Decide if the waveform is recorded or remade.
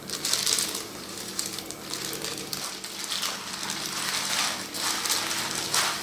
recorded